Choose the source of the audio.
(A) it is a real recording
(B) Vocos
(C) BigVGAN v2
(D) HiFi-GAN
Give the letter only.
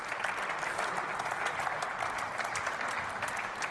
C